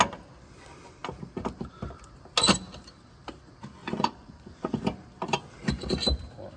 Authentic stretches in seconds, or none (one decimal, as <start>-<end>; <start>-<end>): 0.0-3.8; 4.8-6.6